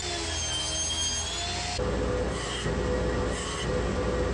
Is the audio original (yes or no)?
yes